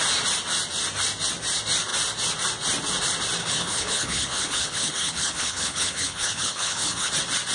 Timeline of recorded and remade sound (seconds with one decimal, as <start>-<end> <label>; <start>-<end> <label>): 0.0-3.4 recorded; 3.4-7.1 remade; 7.1-7.5 recorded